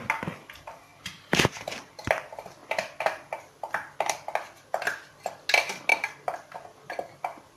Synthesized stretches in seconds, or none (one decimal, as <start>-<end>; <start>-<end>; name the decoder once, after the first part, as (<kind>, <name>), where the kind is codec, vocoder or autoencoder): 0.9-2.0 (vocoder, BigVGAN v2); 2.6-3.4; 5.9-6.9